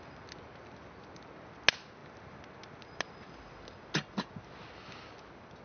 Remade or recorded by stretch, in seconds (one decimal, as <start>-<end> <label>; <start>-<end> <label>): 0.0-5.6 recorded